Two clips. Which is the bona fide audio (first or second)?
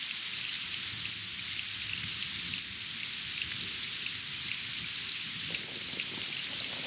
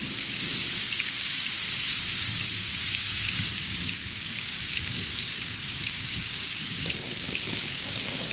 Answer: first